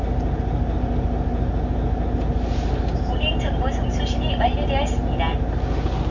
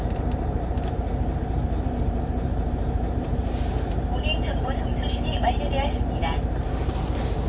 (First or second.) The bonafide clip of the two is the first